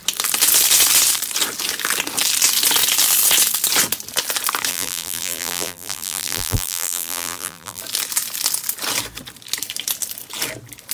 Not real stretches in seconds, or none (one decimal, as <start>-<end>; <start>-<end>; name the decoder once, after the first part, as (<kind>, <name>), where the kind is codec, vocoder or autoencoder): 4.7-7.8 (vocoder, BigVGAN v2)